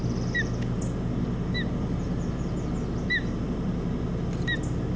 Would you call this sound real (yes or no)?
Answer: yes